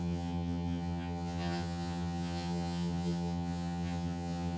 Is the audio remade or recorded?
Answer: remade